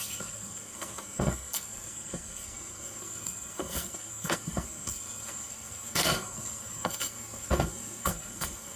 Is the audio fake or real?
fake